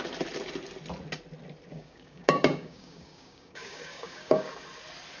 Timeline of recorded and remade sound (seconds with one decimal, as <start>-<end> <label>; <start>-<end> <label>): 0.0-1.7 recorded; 1.7-4.5 remade; 4.5-5.2 recorded